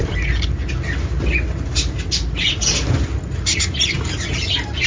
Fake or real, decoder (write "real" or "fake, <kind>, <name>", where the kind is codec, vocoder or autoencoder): real